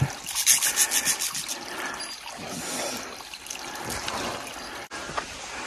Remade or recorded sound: recorded